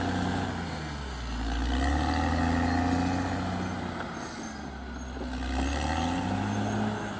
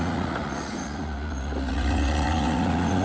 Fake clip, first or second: second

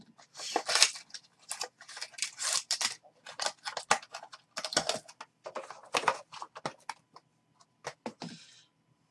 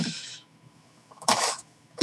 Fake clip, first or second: second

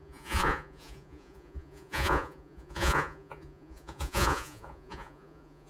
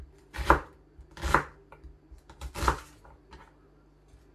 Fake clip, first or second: first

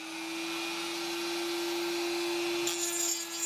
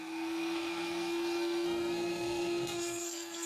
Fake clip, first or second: second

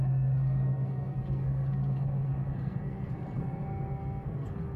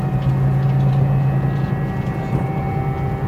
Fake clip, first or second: first